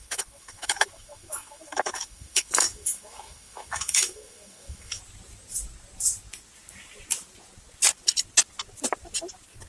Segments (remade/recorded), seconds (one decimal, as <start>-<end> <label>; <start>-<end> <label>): 0.0-5.0 remade; 5.0-9.7 recorded